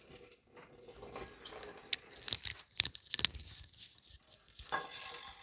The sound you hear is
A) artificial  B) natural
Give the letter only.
B